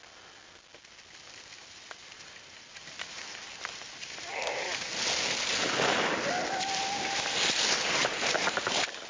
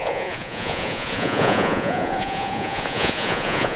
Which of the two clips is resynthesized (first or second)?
second